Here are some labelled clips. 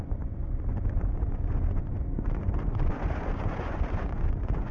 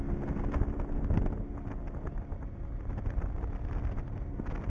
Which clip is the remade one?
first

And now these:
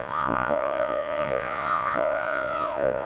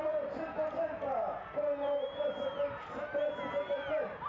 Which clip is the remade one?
first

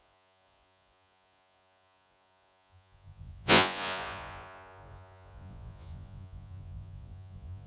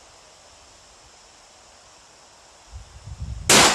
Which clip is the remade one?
first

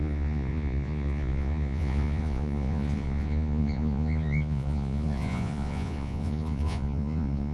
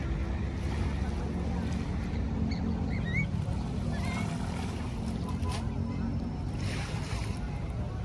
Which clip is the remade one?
first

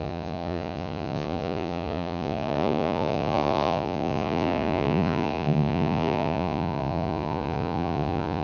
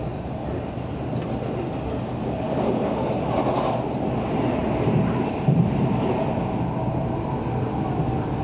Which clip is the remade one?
first